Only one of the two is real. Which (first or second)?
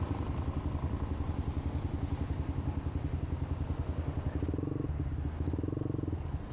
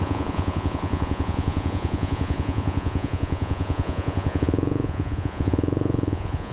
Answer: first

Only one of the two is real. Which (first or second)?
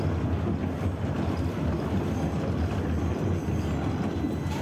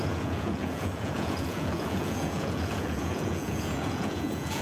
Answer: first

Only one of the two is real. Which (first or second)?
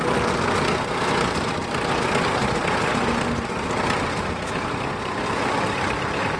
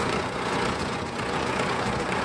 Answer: first